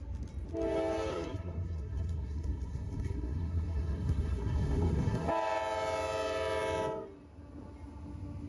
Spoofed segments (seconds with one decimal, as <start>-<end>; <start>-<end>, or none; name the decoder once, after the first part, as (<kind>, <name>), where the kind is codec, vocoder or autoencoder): 1.1-5.3 (codec, SNAC)